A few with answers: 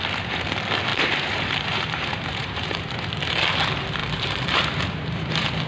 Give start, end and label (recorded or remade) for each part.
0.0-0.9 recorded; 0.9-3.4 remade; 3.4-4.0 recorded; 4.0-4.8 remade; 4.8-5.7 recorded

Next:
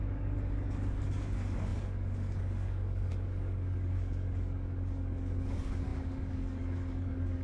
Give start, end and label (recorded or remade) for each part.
0.0-7.4 remade

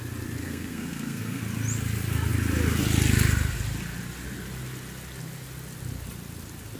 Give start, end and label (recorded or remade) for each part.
0.0-0.4 recorded; 0.4-1.4 remade; 1.4-6.8 recorded

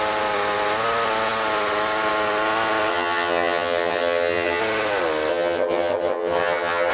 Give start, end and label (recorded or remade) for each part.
0.0-2.9 recorded; 2.9-4.6 remade; 4.6-5.3 recorded; 5.3-6.9 remade

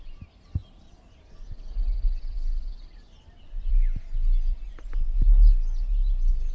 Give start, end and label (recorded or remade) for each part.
0.0-6.5 recorded

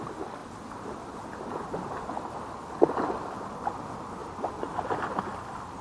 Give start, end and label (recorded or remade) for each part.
0.0-5.8 recorded

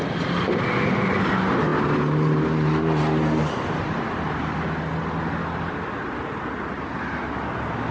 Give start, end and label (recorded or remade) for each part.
0.0-7.9 recorded

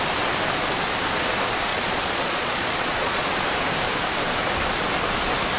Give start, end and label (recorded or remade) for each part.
0.0-1.7 recorded; 1.7-3.3 remade; 3.3-5.6 recorded